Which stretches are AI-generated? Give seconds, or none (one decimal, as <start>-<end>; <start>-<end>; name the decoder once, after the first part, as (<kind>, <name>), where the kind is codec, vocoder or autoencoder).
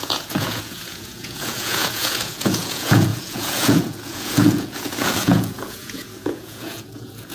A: 0.0-7.3 (vocoder, Vocos)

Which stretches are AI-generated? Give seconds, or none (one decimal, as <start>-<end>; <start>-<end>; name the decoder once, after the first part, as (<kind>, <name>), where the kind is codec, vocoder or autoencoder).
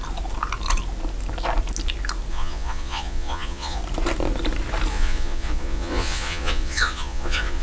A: 2.3-3.8 (vocoder, Vocos); 4.9-7.6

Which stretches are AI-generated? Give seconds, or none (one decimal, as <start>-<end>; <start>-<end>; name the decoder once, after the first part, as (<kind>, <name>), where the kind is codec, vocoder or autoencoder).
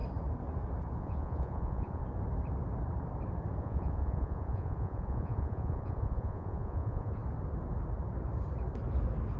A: 1.0-2.0 (vocoder, Vocos); 3.6-7.2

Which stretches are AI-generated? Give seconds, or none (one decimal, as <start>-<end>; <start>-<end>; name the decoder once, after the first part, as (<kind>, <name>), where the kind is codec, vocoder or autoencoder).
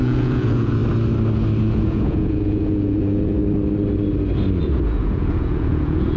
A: 0.0-0.8 (vocoder, Vocos); 1.6-3.4; 4.6-6.2